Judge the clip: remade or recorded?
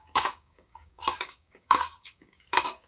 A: remade